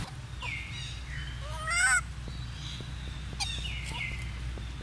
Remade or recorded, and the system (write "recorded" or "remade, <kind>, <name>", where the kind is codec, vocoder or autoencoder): recorded